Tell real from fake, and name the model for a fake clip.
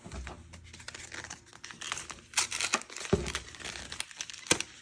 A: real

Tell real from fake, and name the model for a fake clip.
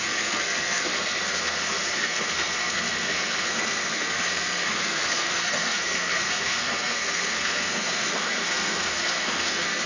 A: fake, codec, SNAC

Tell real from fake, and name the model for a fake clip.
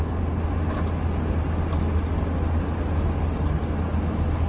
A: real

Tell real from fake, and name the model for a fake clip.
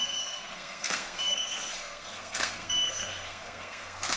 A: fake, codec, SNAC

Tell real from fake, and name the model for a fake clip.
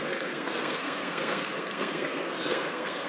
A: fake, codec, SNAC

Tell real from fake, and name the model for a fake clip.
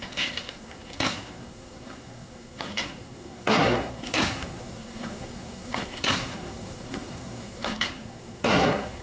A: fake, codec, SNAC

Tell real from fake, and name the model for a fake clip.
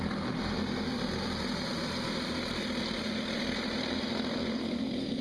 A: real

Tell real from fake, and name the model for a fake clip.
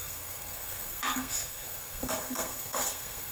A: fake, codec, SNAC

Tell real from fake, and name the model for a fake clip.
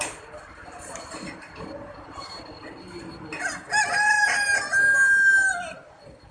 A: real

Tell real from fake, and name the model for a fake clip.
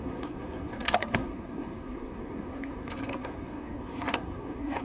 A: fake, codec, SNAC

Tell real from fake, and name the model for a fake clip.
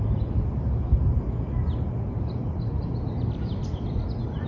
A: real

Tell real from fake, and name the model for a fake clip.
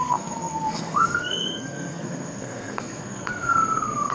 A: fake, codec, SNAC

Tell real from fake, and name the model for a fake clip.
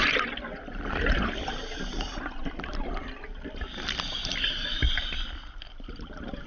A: real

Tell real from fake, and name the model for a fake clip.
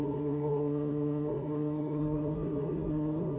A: fake, codec, SNAC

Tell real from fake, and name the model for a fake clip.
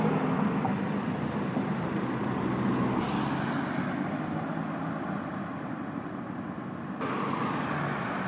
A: real